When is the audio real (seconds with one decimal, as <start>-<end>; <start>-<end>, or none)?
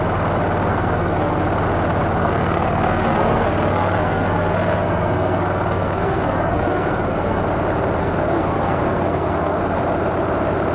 0.0-0.7; 1.4-2.2; 7.4-8.0; 9.6-10.7